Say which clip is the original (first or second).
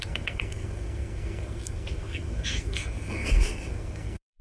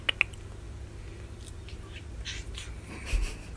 second